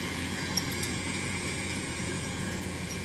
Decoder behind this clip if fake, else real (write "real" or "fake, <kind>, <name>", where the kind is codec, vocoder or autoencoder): fake, vocoder, Vocos